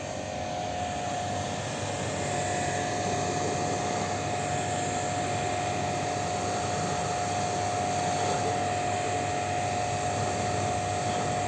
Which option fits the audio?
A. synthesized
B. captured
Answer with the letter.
B